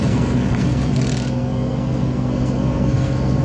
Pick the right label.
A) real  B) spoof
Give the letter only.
B